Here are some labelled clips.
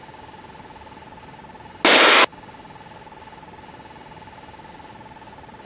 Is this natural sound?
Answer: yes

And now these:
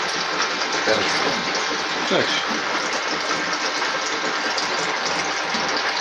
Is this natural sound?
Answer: yes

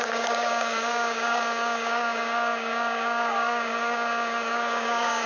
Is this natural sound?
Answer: no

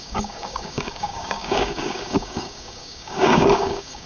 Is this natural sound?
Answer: no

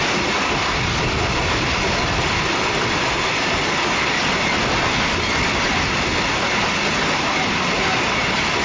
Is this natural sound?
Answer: yes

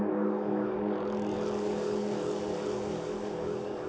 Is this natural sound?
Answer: no